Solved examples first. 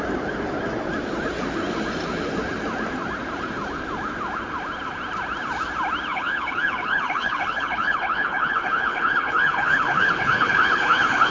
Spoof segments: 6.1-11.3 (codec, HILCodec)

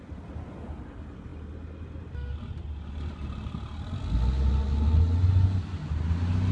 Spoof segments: none

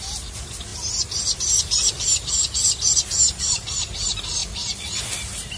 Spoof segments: none

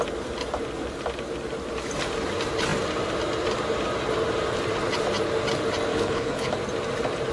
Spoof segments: 5.9-6.5 (codec, HILCodec)